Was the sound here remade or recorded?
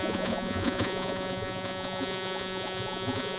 remade